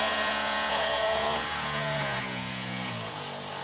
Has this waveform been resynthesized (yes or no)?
yes